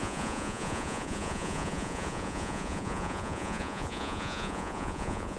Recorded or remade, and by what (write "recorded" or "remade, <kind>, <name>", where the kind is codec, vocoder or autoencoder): remade, vocoder, Vocos